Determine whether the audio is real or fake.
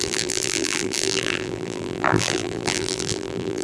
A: fake